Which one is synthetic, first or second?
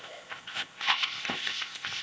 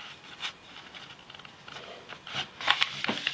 first